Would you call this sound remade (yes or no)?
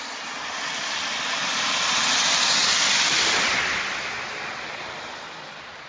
no